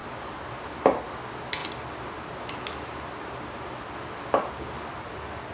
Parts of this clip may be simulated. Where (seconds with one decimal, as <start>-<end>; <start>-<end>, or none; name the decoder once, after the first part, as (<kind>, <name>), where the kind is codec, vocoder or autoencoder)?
none